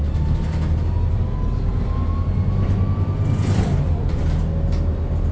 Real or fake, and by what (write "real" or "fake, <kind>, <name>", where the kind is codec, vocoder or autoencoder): real